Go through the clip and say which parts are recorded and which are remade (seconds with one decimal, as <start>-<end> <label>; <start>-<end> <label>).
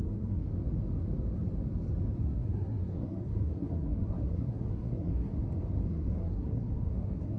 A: 0.0-0.5 remade; 0.5-2.2 recorded; 2.2-5.3 remade; 5.3-5.9 recorded; 5.9-7.4 remade